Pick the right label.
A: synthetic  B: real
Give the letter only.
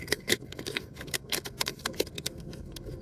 A